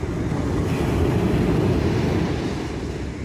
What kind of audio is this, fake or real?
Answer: real